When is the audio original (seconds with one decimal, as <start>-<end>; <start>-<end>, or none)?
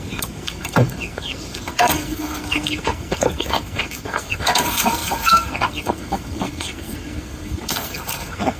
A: none